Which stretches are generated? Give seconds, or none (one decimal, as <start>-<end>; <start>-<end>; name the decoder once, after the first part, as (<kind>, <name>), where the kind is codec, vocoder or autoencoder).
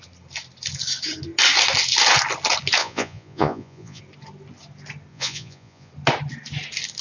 2.8-4.0 (vocoder, Vocos); 5.1-5.9